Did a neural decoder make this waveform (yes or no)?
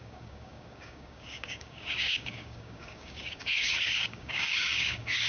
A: yes